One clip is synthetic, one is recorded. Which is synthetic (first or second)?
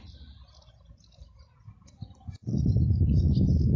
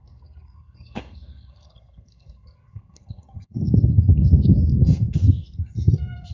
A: second